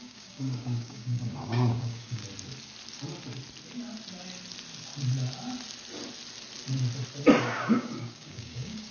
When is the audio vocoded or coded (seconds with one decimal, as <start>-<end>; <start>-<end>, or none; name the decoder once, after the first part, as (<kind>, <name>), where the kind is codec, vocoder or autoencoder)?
0.0-2.2 (codec, DAC); 7.4-8.9